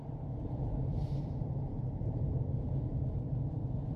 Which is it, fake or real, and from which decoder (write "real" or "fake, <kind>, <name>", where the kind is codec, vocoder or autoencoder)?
fake, vocoder, BigVGAN v2